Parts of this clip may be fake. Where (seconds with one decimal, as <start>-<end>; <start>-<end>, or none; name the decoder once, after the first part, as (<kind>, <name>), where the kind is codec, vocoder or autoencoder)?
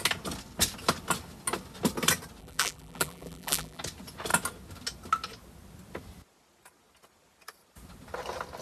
2.4-3.8 (vocoder, BigVGAN v2)